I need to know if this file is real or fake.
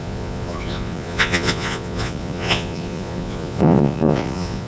fake